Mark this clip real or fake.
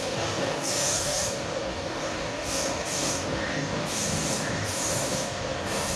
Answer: fake